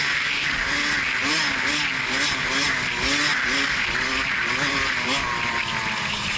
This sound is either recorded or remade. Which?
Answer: recorded